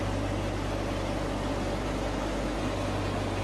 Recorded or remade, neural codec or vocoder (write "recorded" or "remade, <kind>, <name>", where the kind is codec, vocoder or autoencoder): recorded